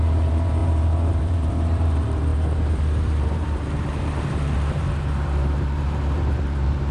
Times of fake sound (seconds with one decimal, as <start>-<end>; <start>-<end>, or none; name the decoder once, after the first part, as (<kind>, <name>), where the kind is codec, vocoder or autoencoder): 0.0-6.9 (vocoder, BigVGAN v2)